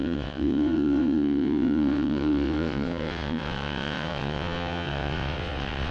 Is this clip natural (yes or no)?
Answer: no